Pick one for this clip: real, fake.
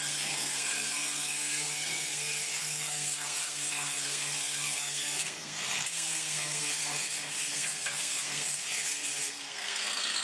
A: fake